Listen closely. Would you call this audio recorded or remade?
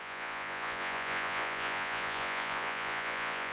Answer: remade